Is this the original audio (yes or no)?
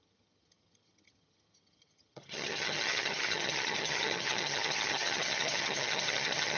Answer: no